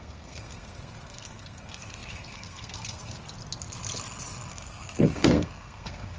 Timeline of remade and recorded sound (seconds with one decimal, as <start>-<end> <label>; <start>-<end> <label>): 0.0-3.2 remade; 3.2-4.5 recorded; 4.5-6.2 remade